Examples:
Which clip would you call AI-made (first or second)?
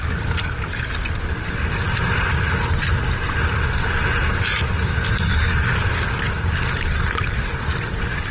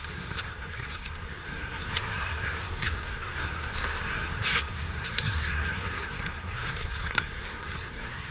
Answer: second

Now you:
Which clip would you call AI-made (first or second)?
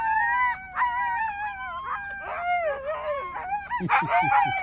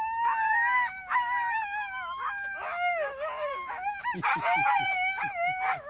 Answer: second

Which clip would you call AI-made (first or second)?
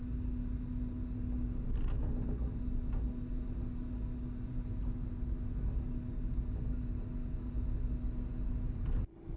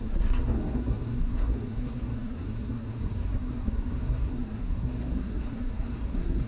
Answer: second